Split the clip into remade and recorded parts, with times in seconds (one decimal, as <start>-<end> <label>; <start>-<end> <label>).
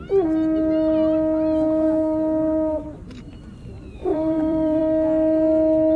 0.0-4.0 recorded; 4.0-4.8 remade; 4.8-6.0 recorded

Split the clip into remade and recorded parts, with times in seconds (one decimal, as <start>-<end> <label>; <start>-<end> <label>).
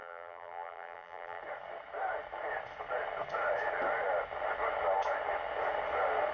0.0-1.4 remade; 1.4-6.3 recorded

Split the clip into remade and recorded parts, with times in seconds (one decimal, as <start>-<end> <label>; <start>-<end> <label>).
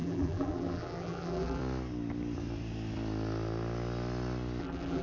0.0-1.6 remade; 1.6-4.6 recorded; 4.6-5.0 remade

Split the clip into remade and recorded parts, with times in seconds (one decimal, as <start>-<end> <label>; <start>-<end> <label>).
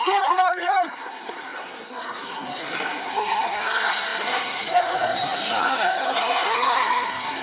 0.0-7.4 remade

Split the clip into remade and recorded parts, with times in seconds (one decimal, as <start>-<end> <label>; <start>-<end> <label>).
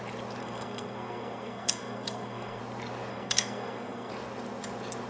0.0-0.4 recorded; 0.4-2.6 remade; 2.6-3.1 recorded; 3.1-4.1 remade; 4.1-5.1 recorded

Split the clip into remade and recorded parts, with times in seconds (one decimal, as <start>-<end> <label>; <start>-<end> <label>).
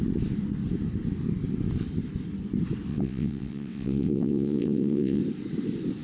0.0-2.9 recorded; 2.9-5.2 remade; 5.2-6.0 recorded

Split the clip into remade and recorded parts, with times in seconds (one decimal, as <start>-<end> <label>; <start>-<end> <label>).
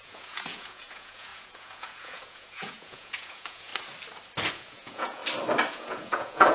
0.0-3.7 remade; 3.7-4.5 recorded; 4.5-5.2 remade; 5.2-5.7 recorded; 5.7-6.5 remade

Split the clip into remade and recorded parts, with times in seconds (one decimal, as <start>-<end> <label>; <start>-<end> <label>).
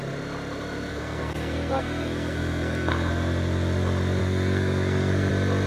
0.0-0.9 recorded; 0.9-3.1 remade; 3.1-4.2 recorded; 4.2-5.3 remade; 5.3-5.7 recorded